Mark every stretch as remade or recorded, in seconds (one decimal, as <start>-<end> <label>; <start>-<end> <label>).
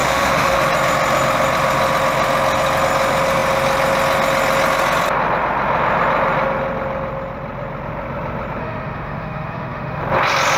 0.0-0.6 remade; 0.6-8.6 recorded; 8.6-10.0 remade; 10.0-10.6 recorded